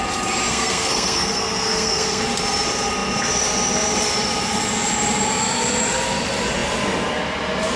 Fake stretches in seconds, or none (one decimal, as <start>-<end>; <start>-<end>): 0.5-2.2